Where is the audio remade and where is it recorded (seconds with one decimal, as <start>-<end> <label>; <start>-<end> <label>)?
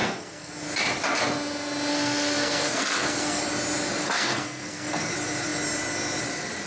0.0-0.5 remade; 0.5-1.9 recorded; 1.9-3.4 remade; 3.4-4.0 recorded; 4.0-5.1 remade; 5.1-6.7 recorded